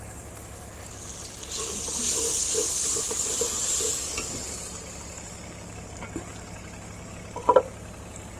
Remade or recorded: recorded